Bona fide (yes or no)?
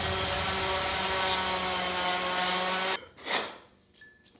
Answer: yes